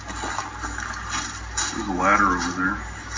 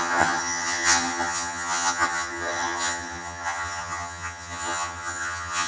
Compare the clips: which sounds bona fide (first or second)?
first